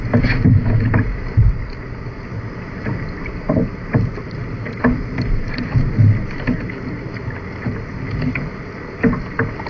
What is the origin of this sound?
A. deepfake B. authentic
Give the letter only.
B